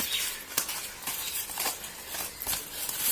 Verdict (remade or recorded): recorded